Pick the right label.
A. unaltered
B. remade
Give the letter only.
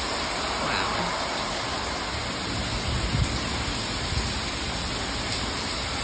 A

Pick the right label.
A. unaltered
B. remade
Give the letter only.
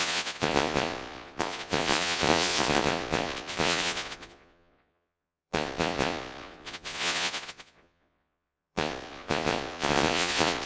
B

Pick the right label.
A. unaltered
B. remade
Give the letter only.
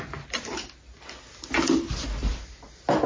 A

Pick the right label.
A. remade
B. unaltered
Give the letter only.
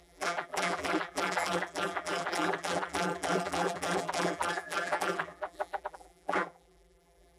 A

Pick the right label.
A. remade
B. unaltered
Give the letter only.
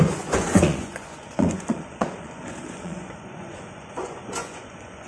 A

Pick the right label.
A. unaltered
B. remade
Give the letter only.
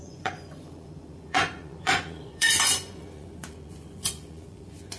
B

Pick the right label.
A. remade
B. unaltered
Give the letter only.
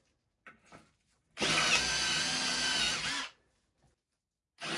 B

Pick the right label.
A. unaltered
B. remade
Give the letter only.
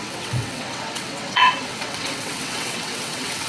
B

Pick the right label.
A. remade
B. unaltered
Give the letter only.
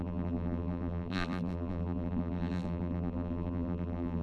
A